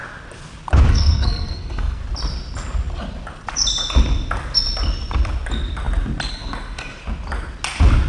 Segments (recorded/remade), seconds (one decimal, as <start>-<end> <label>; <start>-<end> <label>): 0.0-0.9 recorded; 0.9-2.0 remade; 2.0-6.3 recorded; 6.3-7.0 remade; 7.0-8.1 recorded